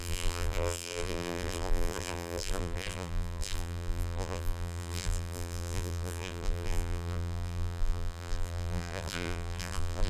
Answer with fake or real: fake